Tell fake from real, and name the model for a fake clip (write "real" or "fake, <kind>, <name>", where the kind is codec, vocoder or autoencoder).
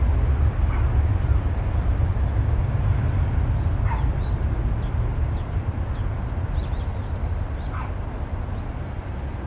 real